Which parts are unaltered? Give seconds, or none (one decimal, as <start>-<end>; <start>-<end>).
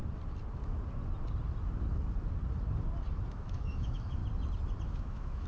0.0-3.3; 4.2-4.9